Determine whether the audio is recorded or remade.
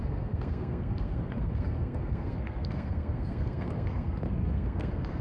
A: remade